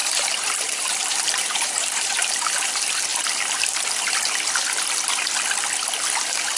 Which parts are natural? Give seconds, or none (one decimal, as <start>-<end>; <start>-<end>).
2.7-6.6